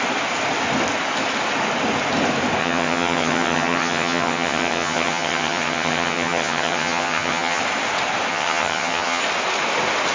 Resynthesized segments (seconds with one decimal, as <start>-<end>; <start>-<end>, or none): 2.6-7.6; 8.3-9.2